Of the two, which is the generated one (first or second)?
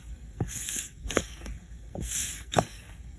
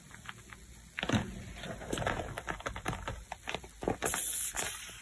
first